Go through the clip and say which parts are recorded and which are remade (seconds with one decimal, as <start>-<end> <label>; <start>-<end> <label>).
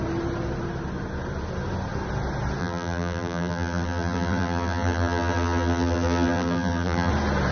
0.0-2.6 recorded; 2.6-7.1 remade; 7.1-7.5 recorded